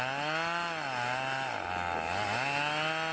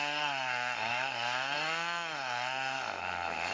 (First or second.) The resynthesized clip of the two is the second